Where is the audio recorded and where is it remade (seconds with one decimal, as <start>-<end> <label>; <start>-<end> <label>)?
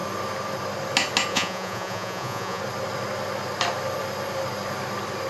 0.0-1.3 recorded; 1.3-2.6 remade; 2.6-5.3 recorded